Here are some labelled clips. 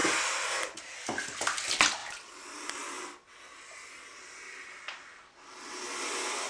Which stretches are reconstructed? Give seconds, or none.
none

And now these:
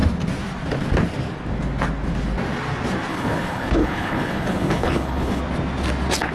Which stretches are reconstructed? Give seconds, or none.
3.1-5.4 (codec, HILCodec)

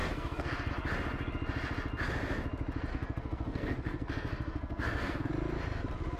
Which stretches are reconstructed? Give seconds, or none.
0.0-0.7 (codec, SNAC); 2.9-5.3